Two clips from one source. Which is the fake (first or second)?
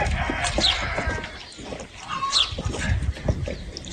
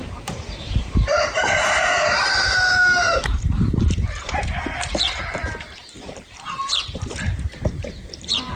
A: second